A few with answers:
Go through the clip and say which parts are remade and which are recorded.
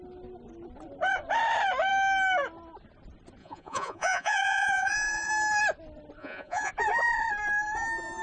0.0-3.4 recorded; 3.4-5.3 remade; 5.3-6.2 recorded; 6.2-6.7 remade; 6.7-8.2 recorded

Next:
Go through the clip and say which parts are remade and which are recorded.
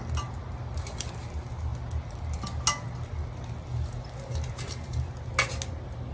0.0-6.1 recorded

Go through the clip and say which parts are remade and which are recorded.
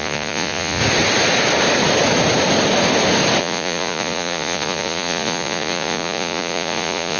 0.0-0.8 remade; 0.8-3.4 recorded; 3.4-7.2 remade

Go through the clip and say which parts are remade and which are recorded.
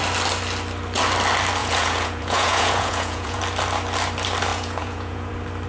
0.0-1.6 recorded; 1.6-3.4 remade; 3.4-4.5 recorded; 4.5-5.3 remade; 5.3-5.7 recorded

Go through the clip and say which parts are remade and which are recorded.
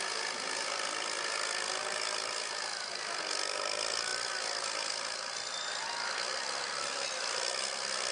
0.0-8.1 recorded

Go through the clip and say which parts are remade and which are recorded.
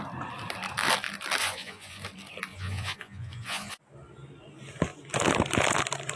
0.0-1.4 recorded; 1.4-2.0 remade; 2.0-2.5 recorded; 2.5-3.8 remade; 3.8-6.2 recorded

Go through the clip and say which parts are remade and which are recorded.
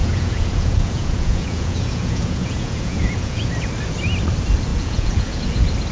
0.0-3.5 remade; 3.5-4.7 recorded; 4.7-5.4 remade; 5.4-5.9 recorded